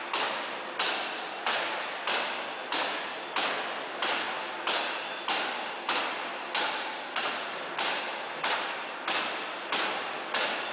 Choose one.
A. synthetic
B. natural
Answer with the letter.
B